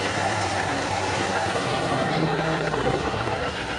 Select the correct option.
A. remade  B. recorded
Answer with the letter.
A